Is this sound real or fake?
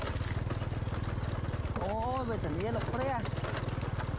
real